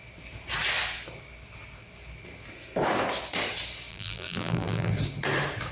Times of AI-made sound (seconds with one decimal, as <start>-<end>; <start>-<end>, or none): 3.9-4.9